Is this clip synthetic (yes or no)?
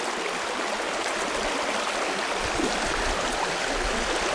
no